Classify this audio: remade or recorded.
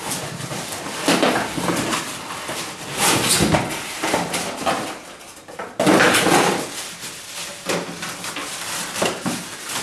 recorded